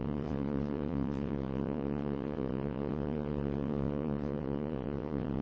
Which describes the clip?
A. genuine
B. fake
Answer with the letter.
B